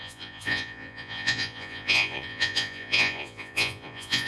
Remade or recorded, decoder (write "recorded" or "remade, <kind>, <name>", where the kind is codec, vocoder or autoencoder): remade, vocoder, Vocos